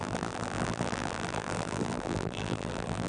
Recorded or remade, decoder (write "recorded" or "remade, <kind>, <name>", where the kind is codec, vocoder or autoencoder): remade, vocoder, BigVGAN v2